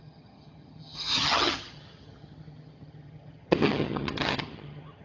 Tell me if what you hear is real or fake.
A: fake